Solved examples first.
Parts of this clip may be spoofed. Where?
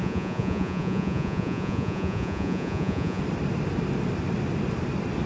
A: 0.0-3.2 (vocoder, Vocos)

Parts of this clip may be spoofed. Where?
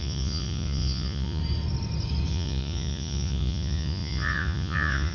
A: 0.0-1.4 (vocoder, Vocos); 2.3-5.1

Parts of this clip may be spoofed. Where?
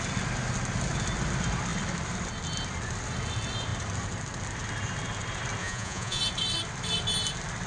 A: 5.6-6.2 (vocoder, Vocos)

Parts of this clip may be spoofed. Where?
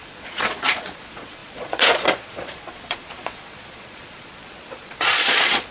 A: 0.0-5.7 (vocoder, Vocos)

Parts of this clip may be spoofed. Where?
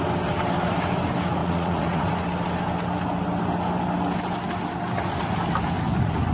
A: 1.4-2.1 (vocoder, Vocos)